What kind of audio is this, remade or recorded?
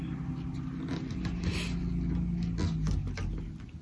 recorded